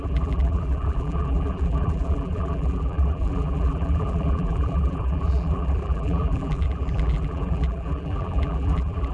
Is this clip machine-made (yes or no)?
yes